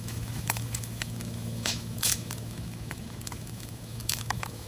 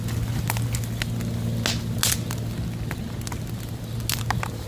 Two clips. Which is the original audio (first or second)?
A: second